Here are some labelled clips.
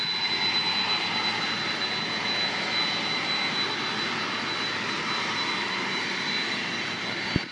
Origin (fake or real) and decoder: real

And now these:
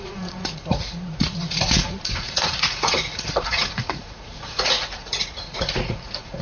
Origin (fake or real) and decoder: fake, vocoder, Vocos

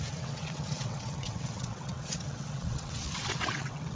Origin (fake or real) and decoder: fake, vocoder, WaveNeXt